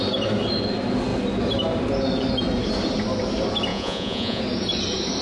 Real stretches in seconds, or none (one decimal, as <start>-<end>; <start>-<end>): 0.0-3.7; 4.4-5.2